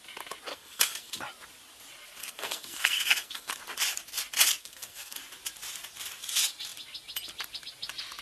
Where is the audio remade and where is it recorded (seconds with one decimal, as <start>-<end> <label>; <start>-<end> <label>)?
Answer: 0.0-0.5 recorded; 0.5-1.1 remade; 1.1-2.2 recorded; 2.2-3.5 remade; 3.5-4.6 recorded; 4.6-5.2 remade; 5.2-8.2 recorded